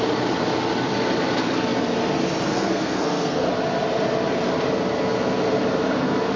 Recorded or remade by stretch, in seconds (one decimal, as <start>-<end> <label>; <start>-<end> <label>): 0.0-2.5 recorded; 2.5-3.5 remade; 3.5-6.4 recorded